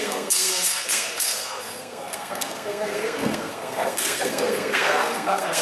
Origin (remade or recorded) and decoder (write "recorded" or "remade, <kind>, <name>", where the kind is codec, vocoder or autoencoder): remade, codec, SNAC